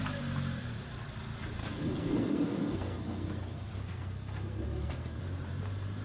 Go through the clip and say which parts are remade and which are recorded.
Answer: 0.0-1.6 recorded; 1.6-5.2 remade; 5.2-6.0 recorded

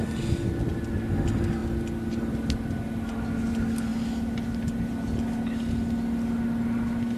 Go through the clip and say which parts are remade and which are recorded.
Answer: 0.0-7.2 recorded

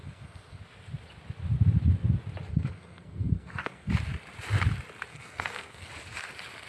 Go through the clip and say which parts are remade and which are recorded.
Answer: 0.0-0.6 remade; 0.6-2.5 recorded; 2.5-3.9 remade; 3.9-5.1 recorded; 5.1-5.9 remade; 5.9-6.7 recorded